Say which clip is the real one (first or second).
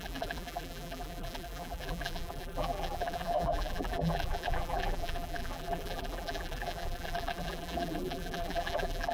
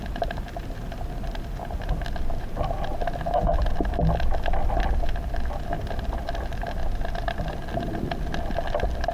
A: second